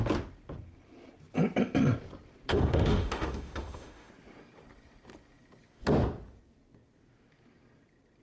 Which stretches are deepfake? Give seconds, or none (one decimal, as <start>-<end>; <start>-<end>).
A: 2.5-4.1